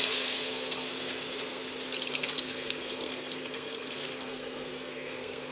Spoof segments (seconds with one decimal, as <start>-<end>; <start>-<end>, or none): 0.0-1.6; 2.1-5.5